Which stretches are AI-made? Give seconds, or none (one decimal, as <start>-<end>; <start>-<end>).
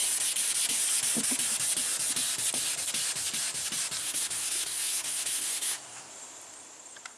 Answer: 4.0-6.1